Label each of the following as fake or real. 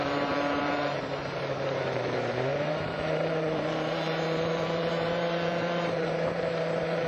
fake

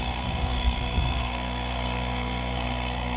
fake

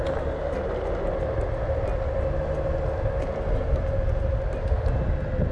real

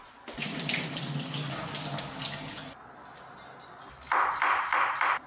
real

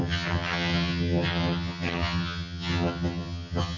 fake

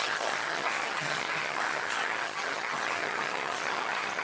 fake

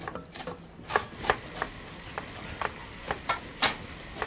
real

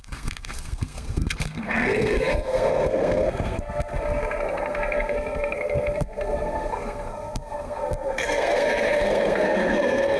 fake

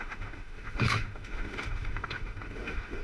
fake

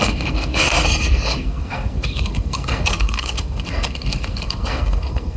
fake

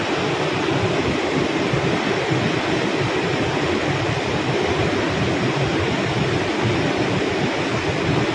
real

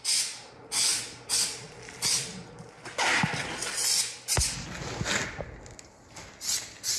real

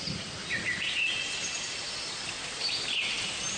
real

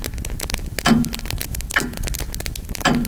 real